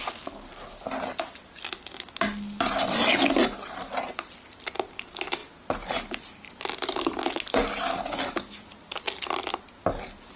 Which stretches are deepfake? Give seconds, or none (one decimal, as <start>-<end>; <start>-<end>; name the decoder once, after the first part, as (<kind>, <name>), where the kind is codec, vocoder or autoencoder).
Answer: none